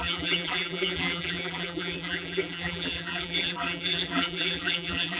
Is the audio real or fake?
fake